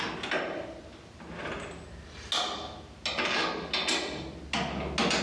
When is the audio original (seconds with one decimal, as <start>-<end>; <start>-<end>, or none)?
0.0-5.2